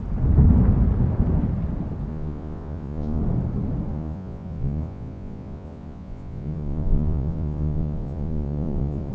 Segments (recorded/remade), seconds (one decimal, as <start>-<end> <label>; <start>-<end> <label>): 0.0-2.1 recorded; 2.1-3.2 remade; 3.2-3.9 recorded; 3.9-9.1 remade